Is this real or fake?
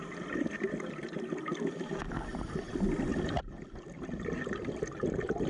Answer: real